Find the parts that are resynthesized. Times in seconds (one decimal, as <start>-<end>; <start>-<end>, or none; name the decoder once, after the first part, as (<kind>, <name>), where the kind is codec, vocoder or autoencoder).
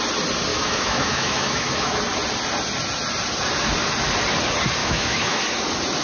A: 0.5-2.0 (autoencoder, DAC-VAE); 4.8-5.4